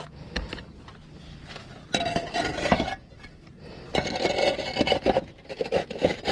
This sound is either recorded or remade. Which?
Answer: recorded